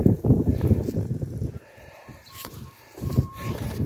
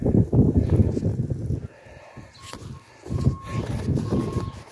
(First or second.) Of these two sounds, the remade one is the first